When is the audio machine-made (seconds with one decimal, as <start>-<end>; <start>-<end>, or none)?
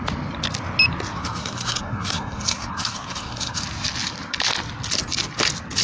1.1-3.6